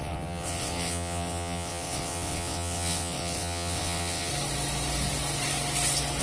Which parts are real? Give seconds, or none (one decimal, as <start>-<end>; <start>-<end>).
4.3-6.2